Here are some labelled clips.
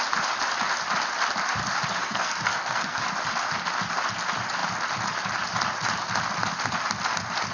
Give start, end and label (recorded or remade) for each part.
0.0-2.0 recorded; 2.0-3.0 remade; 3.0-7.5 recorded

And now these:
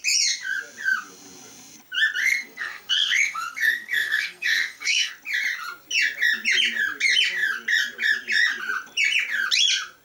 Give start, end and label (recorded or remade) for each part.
0.0-2.2 recorded; 2.2-5.1 remade; 5.1-10.0 recorded

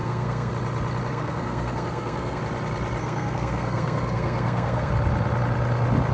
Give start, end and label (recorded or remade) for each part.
0.0-0.5 remade; 0.5-1.1 recorded; 1.1-2.4 remade; 2.4-3.0 recorded; 3.0-4.9 remade; 4.9-6.1 recorded

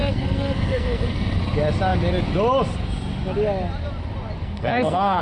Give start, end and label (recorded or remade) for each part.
0.0-1.4 remade; 1.4-4.4 recorded; 4.4-5.2 remade

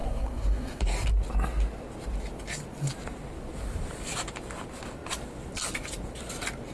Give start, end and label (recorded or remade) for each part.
0.0-0.8 remade; 0.8-6.7 recorded

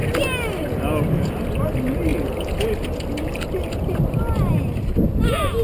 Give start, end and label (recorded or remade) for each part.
0.0-5.6 recorded